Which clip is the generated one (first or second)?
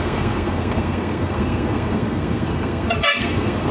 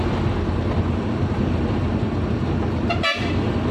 first